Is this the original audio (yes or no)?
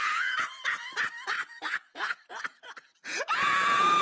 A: no